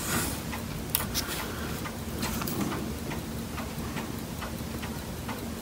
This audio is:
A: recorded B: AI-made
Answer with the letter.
A